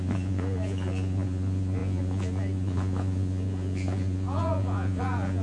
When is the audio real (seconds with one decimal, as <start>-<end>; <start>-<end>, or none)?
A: none